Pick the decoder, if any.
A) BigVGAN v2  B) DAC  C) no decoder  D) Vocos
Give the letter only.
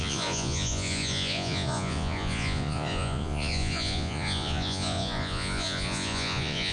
D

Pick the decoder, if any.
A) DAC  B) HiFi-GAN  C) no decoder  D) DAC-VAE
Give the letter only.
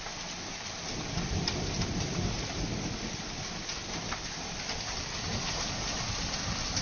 C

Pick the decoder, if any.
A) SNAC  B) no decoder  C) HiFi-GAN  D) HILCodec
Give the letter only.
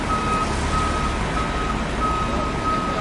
B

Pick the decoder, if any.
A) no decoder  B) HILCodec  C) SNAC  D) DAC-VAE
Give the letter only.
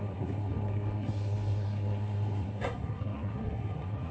C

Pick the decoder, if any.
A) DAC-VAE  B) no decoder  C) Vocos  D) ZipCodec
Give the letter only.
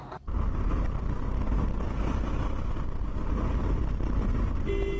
B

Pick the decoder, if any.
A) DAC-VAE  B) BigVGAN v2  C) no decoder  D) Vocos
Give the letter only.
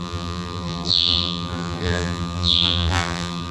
B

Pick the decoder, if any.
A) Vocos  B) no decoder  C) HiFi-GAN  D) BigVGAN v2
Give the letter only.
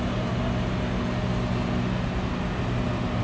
B